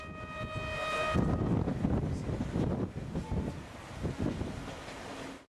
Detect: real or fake real